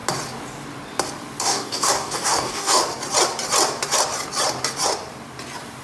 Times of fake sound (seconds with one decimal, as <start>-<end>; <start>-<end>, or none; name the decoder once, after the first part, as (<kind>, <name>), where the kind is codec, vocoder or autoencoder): 1.4-2.8 (codec, DAC)